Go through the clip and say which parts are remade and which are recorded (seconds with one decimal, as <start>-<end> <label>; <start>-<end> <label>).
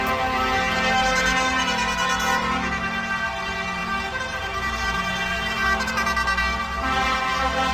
0.0-3.8 recorded; 3.8-5.9 remade; 5.9-7.7 recorded